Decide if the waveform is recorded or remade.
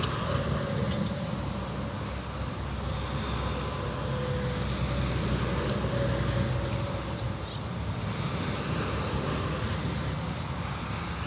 recorded